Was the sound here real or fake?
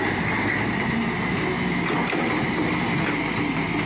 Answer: real